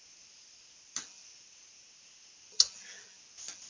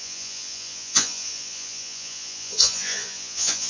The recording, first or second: first